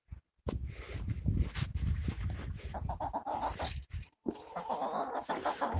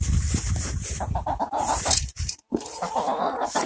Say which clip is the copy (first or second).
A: second